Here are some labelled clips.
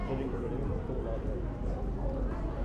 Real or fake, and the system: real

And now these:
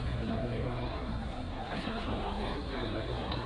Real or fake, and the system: fake, codec, SNAC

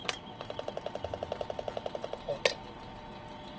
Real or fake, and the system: real